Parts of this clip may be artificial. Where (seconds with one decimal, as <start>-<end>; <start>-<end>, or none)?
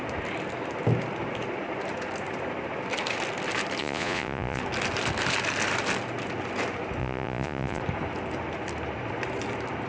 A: 3.8-4.6; 7.0-7.8